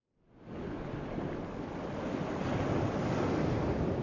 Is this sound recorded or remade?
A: recorded